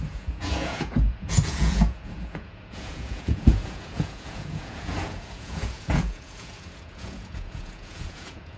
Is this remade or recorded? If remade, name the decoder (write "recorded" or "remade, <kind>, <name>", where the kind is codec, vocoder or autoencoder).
remade, vocoder, Vocos